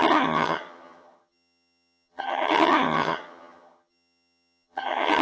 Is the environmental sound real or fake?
fake